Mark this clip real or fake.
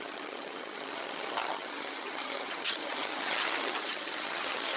fake